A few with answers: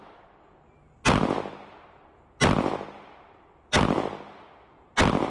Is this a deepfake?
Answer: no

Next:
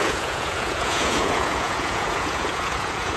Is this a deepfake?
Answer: yes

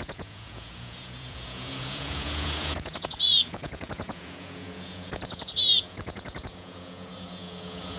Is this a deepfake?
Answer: yes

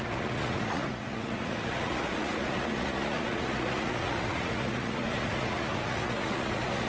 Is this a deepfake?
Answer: yes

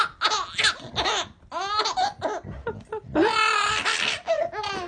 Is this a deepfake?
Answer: no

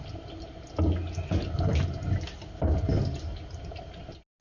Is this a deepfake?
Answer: no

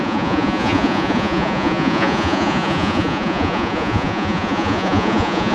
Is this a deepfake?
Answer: yes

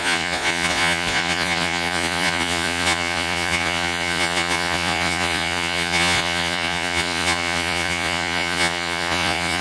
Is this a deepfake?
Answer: yes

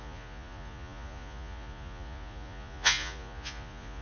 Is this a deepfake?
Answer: yes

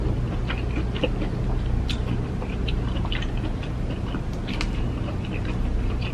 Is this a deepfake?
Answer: no